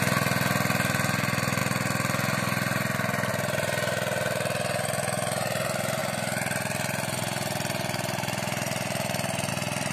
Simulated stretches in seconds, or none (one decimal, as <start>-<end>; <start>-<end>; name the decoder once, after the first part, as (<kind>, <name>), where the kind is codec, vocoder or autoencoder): none